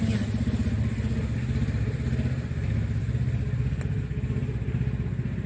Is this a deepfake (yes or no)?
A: no